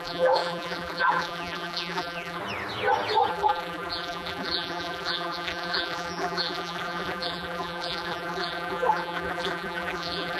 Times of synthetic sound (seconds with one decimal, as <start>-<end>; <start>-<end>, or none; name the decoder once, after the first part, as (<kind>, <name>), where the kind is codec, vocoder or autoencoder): 0.0-2.4 (vocoder, BigVGAN v2); 3.3-10.4